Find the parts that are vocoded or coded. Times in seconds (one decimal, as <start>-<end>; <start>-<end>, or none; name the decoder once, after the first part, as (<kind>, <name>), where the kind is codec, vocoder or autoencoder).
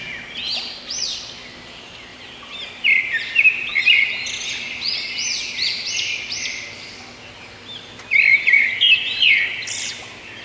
2.1-2.7 (vocoder, BigVGAN v2); 8.3-9.3